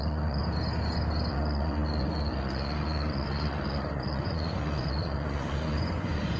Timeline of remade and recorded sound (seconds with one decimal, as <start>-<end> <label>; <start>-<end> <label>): 0.0-0.4 remade; 0.4-1.3 recorded; 1.3-6.4 remade